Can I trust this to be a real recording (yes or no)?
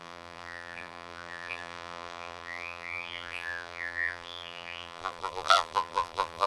no